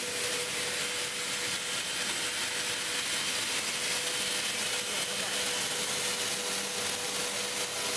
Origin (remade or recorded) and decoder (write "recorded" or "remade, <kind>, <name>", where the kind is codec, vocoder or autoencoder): recorded